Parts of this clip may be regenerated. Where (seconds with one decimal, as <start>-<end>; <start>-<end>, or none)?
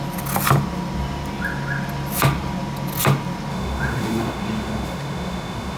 3.5-5.8